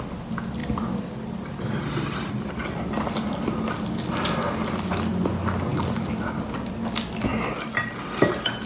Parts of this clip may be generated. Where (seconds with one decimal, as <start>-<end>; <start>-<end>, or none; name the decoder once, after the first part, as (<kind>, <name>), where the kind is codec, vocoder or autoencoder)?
0.6-1.1 (vocoder, BigVGAN v2); 2.6-4.9; 5.7-6.7

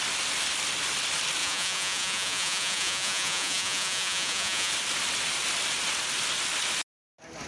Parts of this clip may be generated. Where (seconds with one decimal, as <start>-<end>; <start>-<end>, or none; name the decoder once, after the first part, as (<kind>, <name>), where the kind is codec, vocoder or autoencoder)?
1.4-4.7 (vocoder, Vocos)

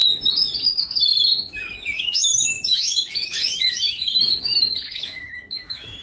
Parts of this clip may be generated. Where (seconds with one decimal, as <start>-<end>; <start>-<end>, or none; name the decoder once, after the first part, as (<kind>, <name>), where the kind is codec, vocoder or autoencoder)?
0.7-6.0 (autoencoder, DAC-VAE)